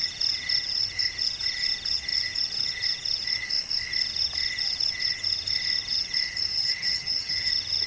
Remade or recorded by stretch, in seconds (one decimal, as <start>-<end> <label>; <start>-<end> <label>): 0.0-6.5 recorded; 6.5-7.5 remade; 7.5-7.9 recorded